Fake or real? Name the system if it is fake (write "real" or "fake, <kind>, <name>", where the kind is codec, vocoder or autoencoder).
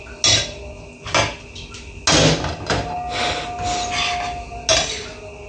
real